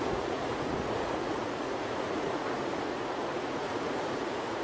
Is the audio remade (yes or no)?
yes